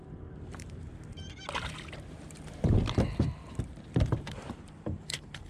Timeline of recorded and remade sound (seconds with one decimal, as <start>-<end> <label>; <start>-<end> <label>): 0.0-0.9 remade; 0.9-4.2 recorded; 4.2-5.5 remade